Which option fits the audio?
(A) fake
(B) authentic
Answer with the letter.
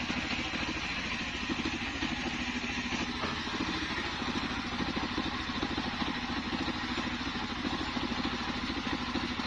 B